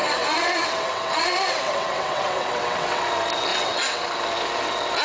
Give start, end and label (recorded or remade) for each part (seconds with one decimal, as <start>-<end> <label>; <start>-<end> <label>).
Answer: 0.0-3.0 remade; 3.0-3.5 recorded; 3.5-4.1 remade; 4.1-5.0 recorded